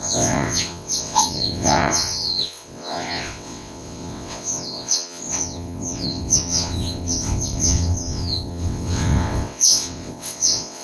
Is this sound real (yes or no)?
no